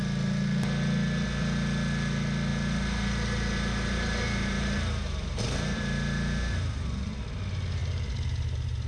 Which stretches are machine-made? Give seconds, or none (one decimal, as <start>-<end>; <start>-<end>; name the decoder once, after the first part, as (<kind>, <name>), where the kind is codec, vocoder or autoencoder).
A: 2.5-7.1 (vocoder, BigVGAN v2); 7.8-8.9